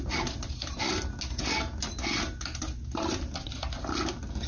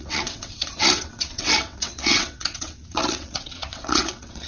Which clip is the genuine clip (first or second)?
first